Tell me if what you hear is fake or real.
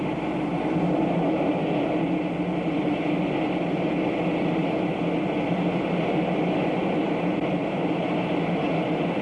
real